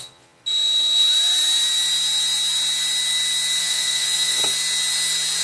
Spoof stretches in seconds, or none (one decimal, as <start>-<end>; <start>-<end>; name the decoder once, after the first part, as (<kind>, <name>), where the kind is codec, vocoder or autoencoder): 0.0-0.4 (vocoder, Vocos); 3.6-4.4